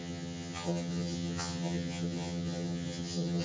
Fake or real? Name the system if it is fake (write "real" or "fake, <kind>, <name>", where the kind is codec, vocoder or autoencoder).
fake, vocoder, HiFi-GAN